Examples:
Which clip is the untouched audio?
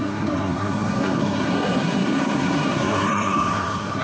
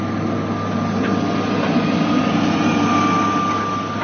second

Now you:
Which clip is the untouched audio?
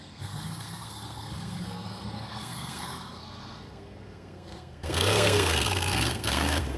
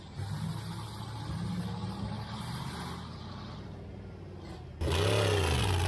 second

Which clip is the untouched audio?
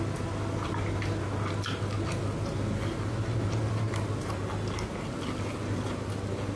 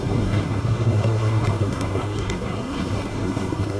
first